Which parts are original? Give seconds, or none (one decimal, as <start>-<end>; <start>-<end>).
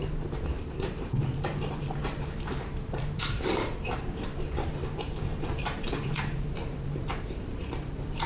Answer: none